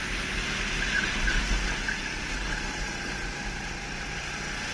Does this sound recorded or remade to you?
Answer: recorded